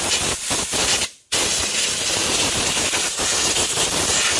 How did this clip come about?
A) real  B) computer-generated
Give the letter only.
A